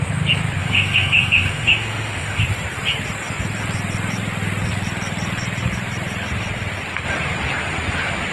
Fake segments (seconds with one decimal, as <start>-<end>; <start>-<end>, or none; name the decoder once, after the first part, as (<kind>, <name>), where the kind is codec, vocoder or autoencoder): 0.6-2.4 (autoencoder, DAC-VAE)